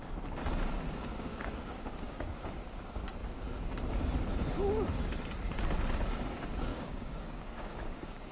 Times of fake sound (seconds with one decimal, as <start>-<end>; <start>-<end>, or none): 1.3-2.5; 6.7-8.3